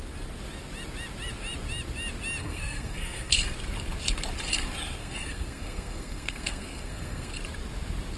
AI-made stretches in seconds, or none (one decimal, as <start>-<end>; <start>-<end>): 2.4-3.4; 5.0-7.3